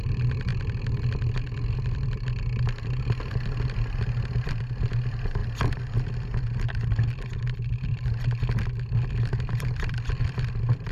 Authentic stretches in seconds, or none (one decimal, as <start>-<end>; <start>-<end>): 0.5-4.8; 5.4-9.1